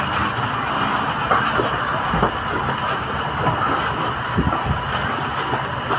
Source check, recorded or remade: recorded